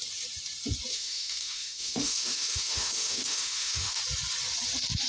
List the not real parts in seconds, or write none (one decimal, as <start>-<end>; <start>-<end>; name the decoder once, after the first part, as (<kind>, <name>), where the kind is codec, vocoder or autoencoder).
0.9-4.0 (autoencoder, DAC-VAE)